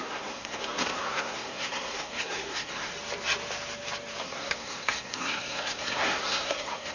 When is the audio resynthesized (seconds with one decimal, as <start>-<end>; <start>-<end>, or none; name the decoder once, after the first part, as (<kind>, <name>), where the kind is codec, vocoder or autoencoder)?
0.0-2.9 (codec, SNAC); 4.2-6.9